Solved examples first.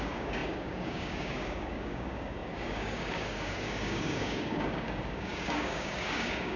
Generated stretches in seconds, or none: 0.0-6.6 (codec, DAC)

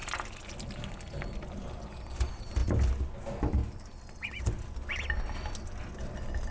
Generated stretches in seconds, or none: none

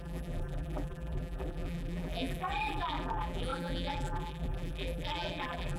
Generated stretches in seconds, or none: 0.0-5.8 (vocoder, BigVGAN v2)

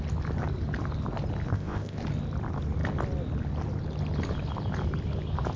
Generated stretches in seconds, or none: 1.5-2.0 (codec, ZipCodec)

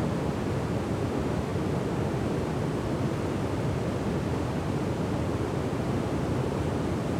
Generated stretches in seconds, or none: none

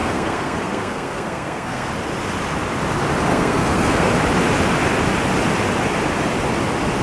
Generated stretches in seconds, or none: 0.0-1.9 (codec, SNAC); 3.3-4.1

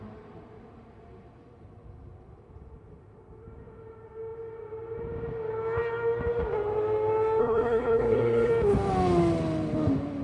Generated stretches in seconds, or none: 7.4-8.5 (codec, SNAC)

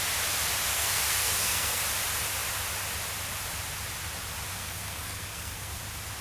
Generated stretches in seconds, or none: 0.7-1.8 (codec, SNAC); 4.5-5.8